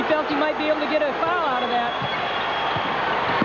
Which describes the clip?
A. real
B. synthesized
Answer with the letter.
A